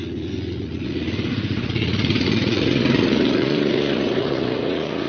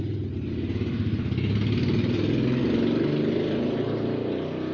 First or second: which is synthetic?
first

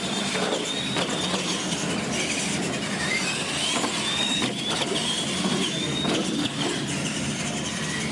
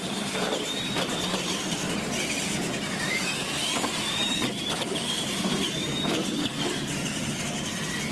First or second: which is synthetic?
second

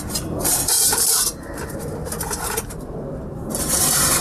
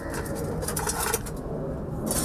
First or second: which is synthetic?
first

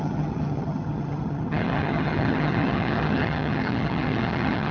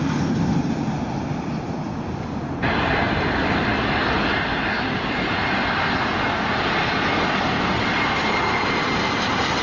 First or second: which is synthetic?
first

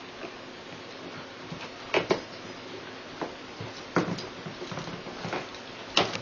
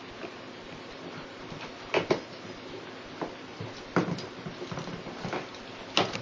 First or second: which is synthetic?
second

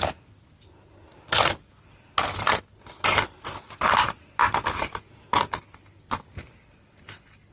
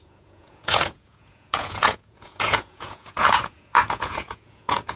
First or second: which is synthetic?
second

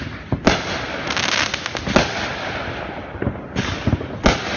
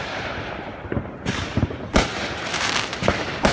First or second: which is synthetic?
second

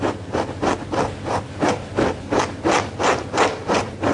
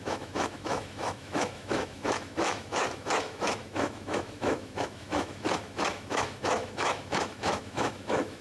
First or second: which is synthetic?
second